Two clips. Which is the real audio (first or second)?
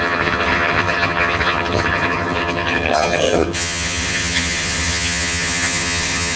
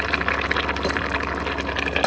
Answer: second